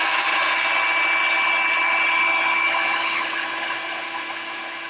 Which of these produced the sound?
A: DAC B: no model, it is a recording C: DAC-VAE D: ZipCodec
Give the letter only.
B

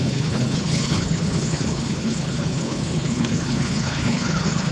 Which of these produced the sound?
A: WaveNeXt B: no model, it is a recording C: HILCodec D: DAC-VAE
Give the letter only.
C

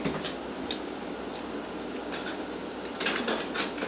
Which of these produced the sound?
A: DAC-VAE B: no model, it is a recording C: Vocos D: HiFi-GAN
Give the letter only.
B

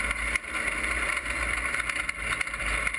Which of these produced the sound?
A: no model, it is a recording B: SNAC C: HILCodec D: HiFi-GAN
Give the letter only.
A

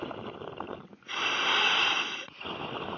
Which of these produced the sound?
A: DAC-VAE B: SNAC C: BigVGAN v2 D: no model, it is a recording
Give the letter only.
D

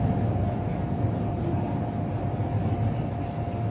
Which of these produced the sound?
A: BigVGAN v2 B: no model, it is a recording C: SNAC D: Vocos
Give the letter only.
B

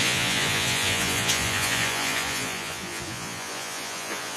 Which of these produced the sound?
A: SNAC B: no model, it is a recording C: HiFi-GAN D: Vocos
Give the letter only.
D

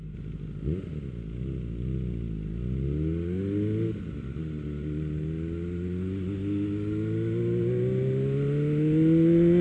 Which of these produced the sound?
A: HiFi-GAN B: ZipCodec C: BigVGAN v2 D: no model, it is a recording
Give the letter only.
D